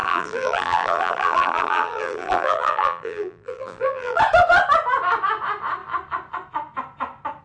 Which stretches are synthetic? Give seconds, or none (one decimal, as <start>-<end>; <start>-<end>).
0.0-4.2